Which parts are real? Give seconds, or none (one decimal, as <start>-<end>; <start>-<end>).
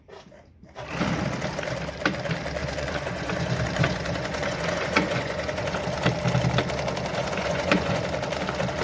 0.0-2.6; 5.8-7.1; 8.0-8.8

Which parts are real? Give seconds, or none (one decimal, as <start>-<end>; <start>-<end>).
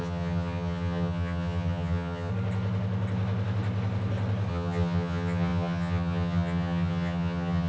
2.3-4.5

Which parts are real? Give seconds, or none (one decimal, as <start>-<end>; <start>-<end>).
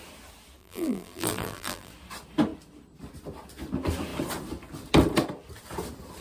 0.0-0.6; 1.9-6.2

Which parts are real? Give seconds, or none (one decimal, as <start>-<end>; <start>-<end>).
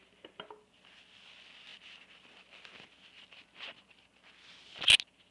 0.0-5.3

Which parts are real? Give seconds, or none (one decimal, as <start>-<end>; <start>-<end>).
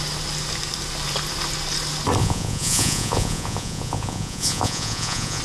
0.0-2.2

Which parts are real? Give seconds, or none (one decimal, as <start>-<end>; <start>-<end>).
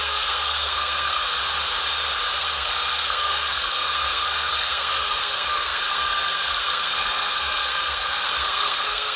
1.4-2.4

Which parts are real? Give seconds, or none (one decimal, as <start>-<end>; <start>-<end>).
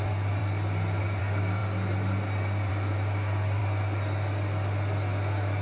0.0-5.6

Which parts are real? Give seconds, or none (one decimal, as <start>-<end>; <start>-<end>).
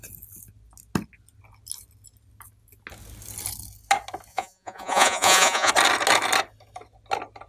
0.0-4.3; 5.7-7.5